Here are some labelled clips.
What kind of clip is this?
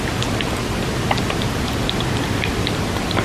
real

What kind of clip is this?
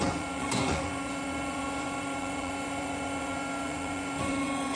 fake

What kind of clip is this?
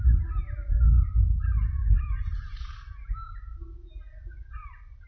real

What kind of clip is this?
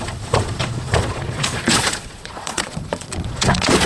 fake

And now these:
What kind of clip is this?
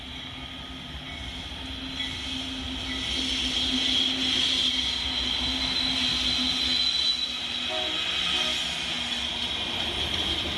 real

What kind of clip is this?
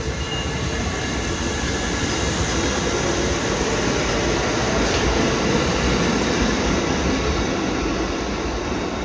real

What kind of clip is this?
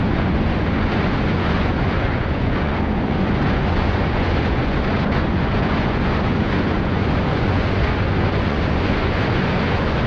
fake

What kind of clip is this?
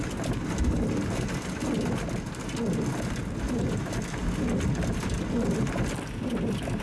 real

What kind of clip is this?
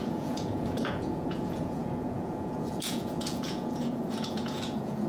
fake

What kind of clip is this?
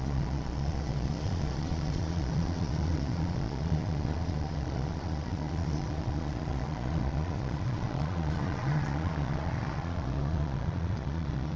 fake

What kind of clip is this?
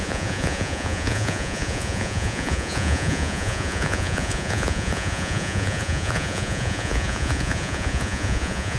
fake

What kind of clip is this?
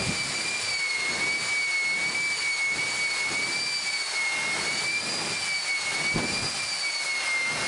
real